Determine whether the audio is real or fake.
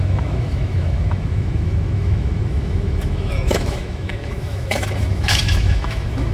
fake